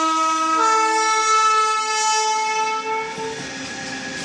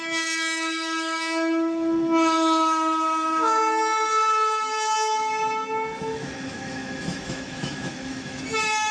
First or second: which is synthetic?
second